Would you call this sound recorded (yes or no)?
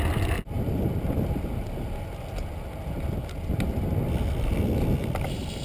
yes